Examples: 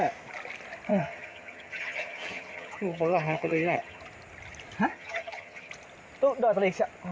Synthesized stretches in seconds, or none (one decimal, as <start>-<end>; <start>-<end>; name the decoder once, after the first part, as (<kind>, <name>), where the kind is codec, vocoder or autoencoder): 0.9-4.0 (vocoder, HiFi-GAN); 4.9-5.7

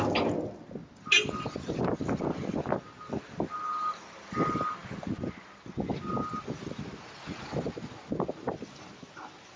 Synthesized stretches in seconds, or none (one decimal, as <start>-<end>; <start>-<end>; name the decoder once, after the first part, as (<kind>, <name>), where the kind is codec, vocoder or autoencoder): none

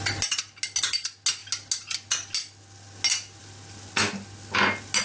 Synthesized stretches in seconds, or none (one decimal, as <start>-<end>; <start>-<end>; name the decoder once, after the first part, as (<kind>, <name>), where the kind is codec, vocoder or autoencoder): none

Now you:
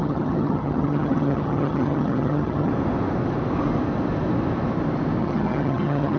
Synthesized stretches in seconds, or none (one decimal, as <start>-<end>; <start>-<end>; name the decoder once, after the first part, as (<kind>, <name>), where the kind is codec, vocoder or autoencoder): 0.0-2.7 (vocoder, HiFi-GAN); 5.2-6.2